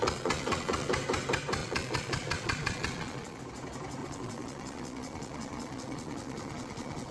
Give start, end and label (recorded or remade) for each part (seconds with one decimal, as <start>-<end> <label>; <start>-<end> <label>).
0.0-0.9 remade; 0.9-1.6 recorded; 1.6-3.4 remade; 3.4-4.0 recorded; 4.0-7.1 remade

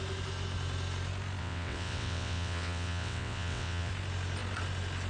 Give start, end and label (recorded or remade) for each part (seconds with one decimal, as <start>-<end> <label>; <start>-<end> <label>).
0.0-1.4 recorded; 1.4-3.9 remade; 3.9-5.1 recorded

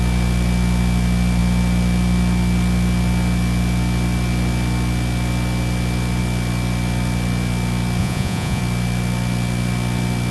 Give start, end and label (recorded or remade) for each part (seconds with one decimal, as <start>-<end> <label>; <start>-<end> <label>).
0.0-8.0 recorded; 8.0-8.6 remade; 8.6-10.3 recorded

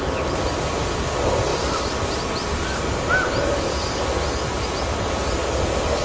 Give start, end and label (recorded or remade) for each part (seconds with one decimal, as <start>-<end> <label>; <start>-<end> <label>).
0.0-6.0 recorded

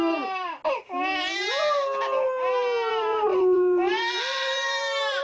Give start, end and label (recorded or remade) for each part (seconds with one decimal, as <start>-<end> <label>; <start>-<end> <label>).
0.0-0.6 remade; 0.6-2.9 recorded; 2.9-5.2 remade

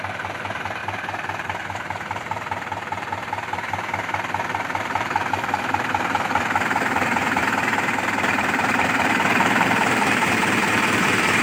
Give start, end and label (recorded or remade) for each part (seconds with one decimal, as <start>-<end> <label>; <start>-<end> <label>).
0.0-7.4 remade; 7.4-8.0 recorded; 8.0-11.4 remade